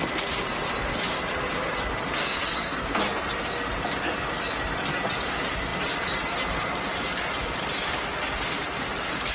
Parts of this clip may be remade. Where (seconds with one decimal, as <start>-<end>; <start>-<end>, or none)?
2.2-3.0